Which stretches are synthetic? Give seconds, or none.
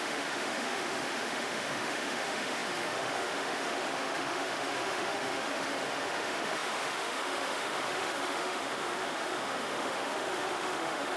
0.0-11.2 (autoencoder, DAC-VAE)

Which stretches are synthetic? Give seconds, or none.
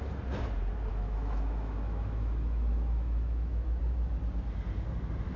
0.9-3.8 (autoencoder, DAC-VAE)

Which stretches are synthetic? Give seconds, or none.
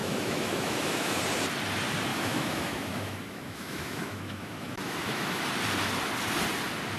0.0-1.2 (autoencoder, DAC-VAE); 2.1-5.4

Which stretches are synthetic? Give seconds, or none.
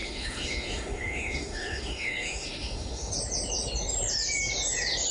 0.0-3.1 (autoencoder, DAC-VAE)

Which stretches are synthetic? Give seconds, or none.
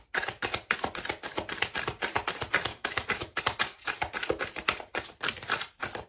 2.7-3.4 (autoencoder, DAC-VAE)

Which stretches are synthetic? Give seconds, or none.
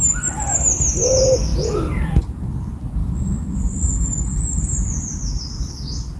3.0-3.6 (autoencoder, DAC-VAE)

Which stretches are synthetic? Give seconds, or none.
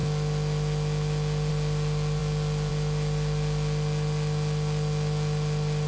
none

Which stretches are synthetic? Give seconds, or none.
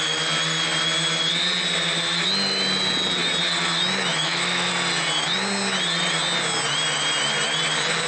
4.1-4.7 (autoencoder, DAC-VAE)